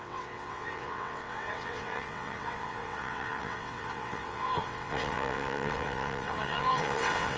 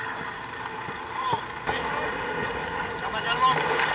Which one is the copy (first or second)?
first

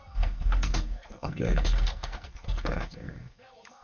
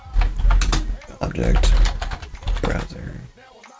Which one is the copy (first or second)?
first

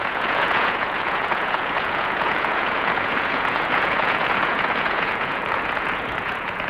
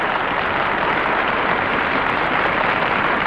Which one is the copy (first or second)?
first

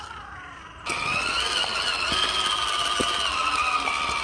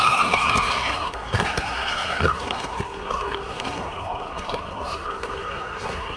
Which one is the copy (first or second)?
second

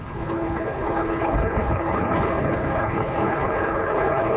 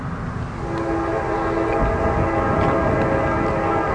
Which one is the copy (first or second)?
first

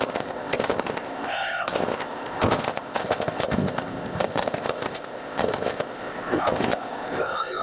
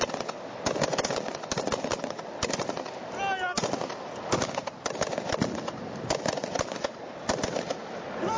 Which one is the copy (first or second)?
first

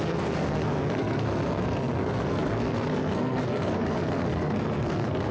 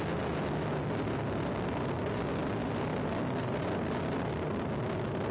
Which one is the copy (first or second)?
first